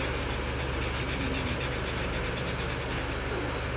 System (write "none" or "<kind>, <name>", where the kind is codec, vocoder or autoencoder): none